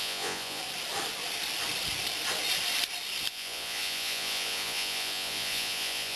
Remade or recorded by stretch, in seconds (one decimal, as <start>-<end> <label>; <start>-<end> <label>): 0.0-0.6 remade; 0.6-3.3 recorded; 3.3-6.2 remade

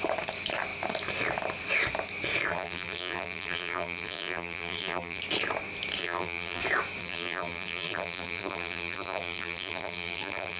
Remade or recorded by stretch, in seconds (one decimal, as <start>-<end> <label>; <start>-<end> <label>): 0.0-2.5 recorded; 2.5-5.2 remade; 5.2-6.0 recorded; 6.0-6.6 remade; 6.6-7.0 recorded; 7.0-10.6 remade

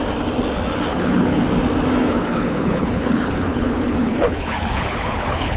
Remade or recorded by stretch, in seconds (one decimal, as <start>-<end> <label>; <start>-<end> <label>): 0.0-0.9 recorded; 0.9-1.4 remade; 1.4-2.0 recorded; 2.0-5.6 remade

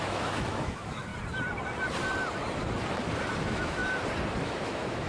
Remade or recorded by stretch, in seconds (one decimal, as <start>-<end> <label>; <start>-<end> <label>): 0.0-1.1 remade; 1.1-3.4 recorded; 3.4-3.8 remade; 3.8-4.4 recorded; 4.4-5.1 remade

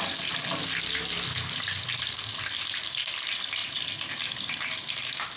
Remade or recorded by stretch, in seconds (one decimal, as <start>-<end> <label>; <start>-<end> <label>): 0.0-5.4 recorded

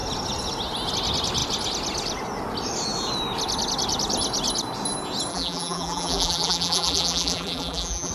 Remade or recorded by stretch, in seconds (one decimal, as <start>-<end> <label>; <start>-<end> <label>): 0.0-5.3 recorded; 5.3-8.1 remade

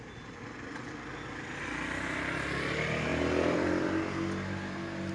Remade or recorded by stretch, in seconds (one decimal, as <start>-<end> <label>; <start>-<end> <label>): 0.0-5.1 recorded

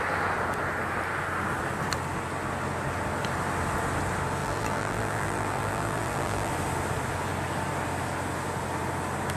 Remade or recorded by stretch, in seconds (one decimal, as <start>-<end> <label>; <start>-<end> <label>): 0.0-4.4 recorded; 4.4-6.5 remade; 6.5-9.4 recorded